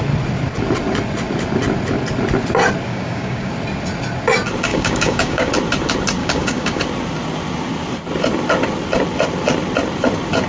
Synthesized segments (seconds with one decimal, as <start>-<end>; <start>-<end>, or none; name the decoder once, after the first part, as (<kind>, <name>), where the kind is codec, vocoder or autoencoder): 2.9-3.5 (codec, DAC); 4.7-5.5; 6.2-6.8